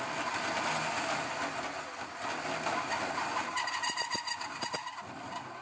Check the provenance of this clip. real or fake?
real